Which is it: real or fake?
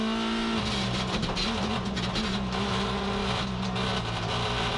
real